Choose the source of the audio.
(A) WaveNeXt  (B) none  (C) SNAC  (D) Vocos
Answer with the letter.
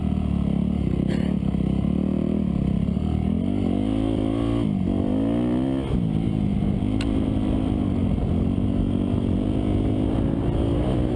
B